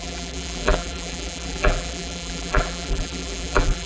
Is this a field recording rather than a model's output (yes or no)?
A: no